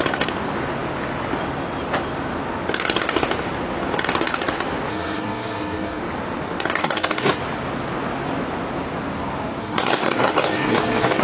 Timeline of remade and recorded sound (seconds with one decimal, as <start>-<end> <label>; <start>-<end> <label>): 0.0-4.9 recorded; 4.9-6.0 remade; 6.0-6.8 recorded; 6.8-7.4 remade; 7.4-9.6 recorded; 9.6-11.2 remade